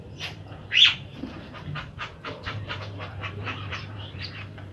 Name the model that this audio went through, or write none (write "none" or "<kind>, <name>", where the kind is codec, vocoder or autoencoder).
vocoder, BigVGAN v2